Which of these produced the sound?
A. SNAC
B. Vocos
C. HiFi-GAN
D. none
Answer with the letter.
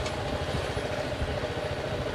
D